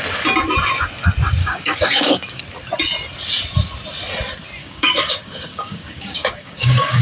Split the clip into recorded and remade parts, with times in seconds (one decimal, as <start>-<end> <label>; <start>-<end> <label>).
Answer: 0.0-1.4 recorded; 1.4-2.4 remade; 2.4-4.6 recorded; 4.6-7.0 remade